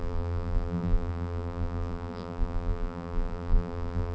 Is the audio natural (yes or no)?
no